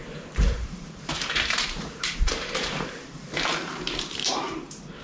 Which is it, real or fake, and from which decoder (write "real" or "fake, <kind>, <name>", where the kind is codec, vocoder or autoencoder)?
fake, vocoder, BigVGAN v2